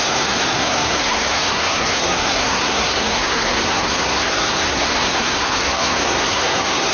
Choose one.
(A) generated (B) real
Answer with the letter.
A